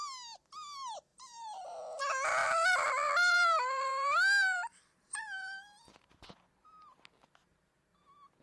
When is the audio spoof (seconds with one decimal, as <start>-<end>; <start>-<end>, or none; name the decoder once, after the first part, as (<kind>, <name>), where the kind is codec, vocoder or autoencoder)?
1.1-1.8 (vocoder, BigVGAN v2); 2.4-5.9